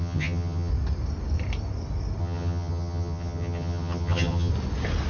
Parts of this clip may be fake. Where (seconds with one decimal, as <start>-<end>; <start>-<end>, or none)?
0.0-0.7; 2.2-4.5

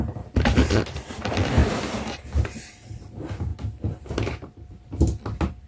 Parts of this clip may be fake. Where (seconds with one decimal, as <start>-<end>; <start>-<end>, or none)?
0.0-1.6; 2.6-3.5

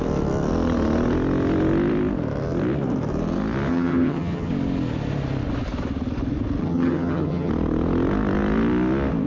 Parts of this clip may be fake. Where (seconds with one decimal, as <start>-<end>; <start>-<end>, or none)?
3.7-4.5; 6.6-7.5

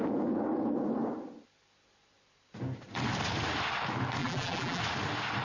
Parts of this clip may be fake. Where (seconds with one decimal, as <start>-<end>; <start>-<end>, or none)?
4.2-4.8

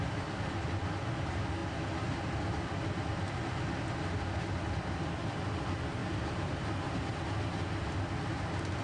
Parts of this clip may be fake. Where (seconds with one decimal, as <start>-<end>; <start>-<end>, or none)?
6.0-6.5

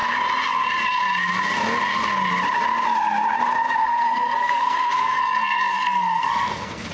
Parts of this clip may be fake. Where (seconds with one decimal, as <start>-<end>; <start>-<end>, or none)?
3.8-6.9

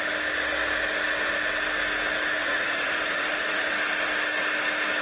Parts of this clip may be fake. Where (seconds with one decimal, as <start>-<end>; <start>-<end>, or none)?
2.4-3.7